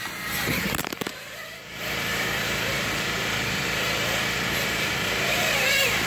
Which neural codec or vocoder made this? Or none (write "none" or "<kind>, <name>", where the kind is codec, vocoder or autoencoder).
vocoder, BigVGAN v2